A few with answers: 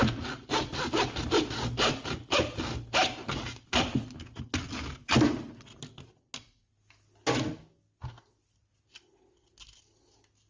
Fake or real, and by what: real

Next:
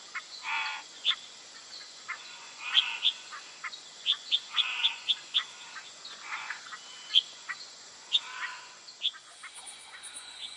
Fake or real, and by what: fake, vocoder, Vocos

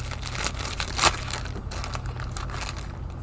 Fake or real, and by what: real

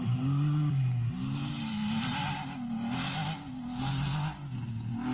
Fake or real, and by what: real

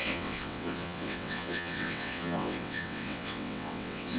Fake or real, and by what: fake, vocoder, WaveNeXt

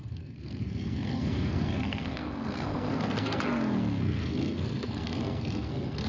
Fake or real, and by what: fake, codec, SNAC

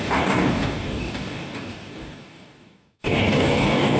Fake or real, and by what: fake, codec, DAC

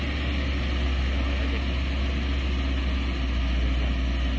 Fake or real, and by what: real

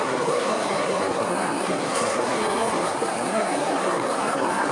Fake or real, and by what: fake, codec, SNAC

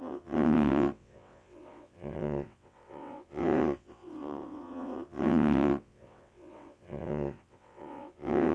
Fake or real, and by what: fake, vocoder, WaveNeXt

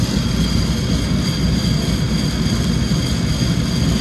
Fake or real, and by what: real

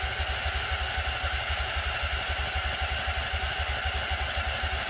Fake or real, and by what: real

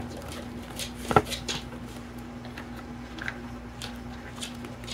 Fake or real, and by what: real